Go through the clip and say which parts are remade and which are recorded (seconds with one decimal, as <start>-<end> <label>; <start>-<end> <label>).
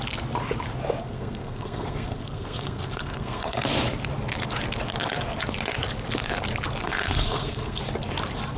0.0-1.0 recorded; 1.0-3.6 remade; 3.6-6.8 recorded; 6.8-7.8 remade; 7.8-8.6 recorded